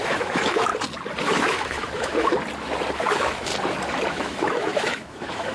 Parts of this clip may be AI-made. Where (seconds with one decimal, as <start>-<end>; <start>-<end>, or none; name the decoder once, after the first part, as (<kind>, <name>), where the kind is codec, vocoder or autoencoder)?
0.0-0.7 (autoencoder, DAC-VAE); 1.2-2.3; 3.0-3.5; 4.1-5.5